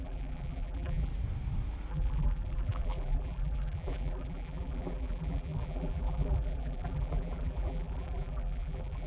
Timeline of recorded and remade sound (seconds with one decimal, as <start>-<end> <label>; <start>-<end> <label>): 0.0-1.1 remade; 1.1-1.9 recorded; 1.9-9.1 remade